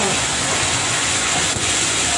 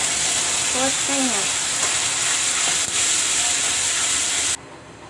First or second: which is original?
second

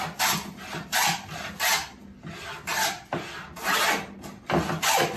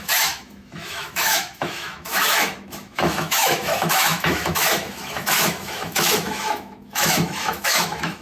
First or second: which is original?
first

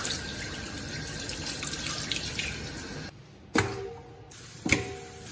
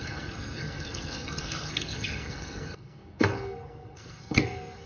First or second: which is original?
first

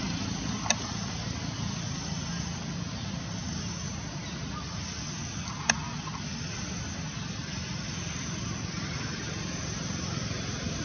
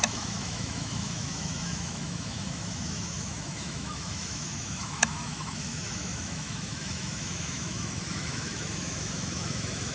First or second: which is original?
first